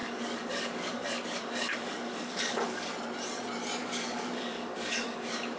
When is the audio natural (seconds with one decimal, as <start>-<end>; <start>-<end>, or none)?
2.9-3.8